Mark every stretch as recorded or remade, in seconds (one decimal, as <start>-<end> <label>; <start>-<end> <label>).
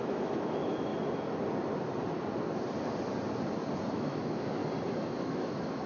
0.0-0.9 remade; 0.9-3.9 recorded; 3.9-4.6 remade; 4.6-5.2 recorded; 5.2-5.9 remade